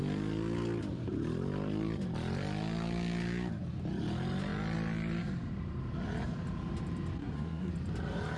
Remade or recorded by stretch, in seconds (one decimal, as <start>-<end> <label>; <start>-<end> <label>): 0.0-7.2 recorded; 7.2-7.7 remade; 7.7-8.4 recorded

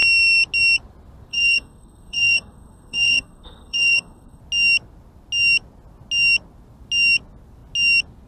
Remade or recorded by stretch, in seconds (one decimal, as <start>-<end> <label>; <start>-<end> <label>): 0.0-1.3 recorded; 1.3-4.4 remade; 4.4-8.3 recorded

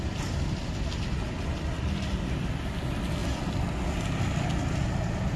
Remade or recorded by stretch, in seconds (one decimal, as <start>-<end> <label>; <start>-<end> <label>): 0.0-5.4 recorded

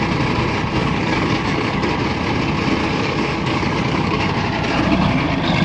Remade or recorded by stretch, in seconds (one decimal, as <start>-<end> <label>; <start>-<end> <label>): 0.0-0.8 recorded; 0.8-1.9 remade; 1.9-2.8 recorded; 2.8-4.3 remade; 4.3-5.6 recorded

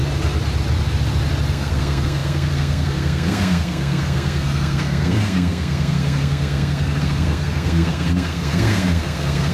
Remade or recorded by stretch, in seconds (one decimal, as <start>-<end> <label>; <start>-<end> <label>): 0.0-1.5 recorded; 1.5-9.5 remade

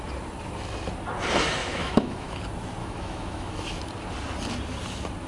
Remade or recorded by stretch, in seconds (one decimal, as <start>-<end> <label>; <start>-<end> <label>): 0.0-1.6 recorded; 1.6-2.4 remade; 2.4-2.8 recorded; 2.8-3.8 remade; 3.8-5.3 recorded

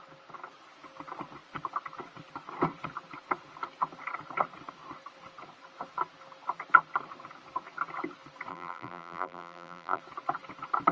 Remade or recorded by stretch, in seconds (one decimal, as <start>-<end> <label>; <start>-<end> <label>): 0.0-8.5 recorded; 8.5-10.0 remade; 10.0-10.9 recorded

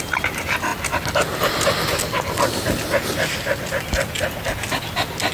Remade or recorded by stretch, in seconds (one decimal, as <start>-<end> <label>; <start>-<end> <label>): 0.0-5.3 recorded